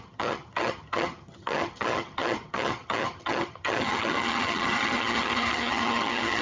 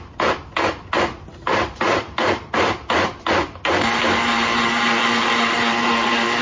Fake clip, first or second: first